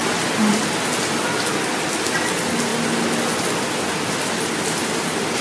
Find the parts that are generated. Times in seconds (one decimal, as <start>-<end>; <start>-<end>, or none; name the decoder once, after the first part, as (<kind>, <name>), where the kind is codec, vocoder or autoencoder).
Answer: none